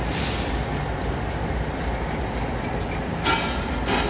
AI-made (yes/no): no